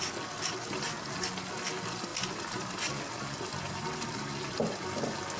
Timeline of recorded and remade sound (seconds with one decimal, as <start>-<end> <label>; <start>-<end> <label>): 0.0-5.4 recorded

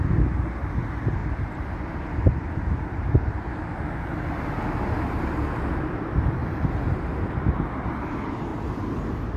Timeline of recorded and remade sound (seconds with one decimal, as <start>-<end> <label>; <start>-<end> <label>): 0.0-1.2 recorded; 1.2-3.4 remade; 3.4-8.5 recorded; 8.5-9.4 remade